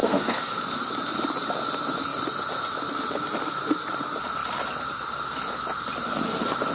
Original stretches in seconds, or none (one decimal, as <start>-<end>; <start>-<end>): 0.6-6.7